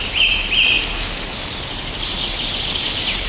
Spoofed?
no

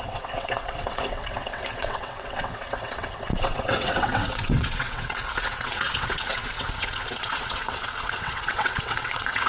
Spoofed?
yes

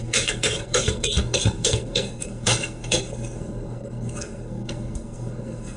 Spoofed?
yes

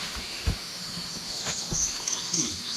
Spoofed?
yes